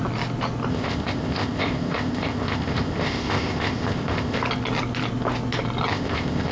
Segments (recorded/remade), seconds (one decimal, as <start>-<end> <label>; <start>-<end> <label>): 0.0-0.7 recorded; 0.7-4.4 remade; 4.4-5.9 recorded; 5.9-6.5 remade